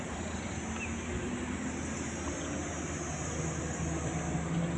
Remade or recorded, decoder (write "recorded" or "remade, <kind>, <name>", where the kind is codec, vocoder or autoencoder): recorded